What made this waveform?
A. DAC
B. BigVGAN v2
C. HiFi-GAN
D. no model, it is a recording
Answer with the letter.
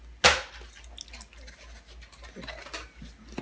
D